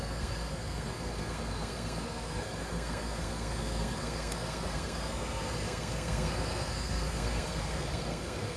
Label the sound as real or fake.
fake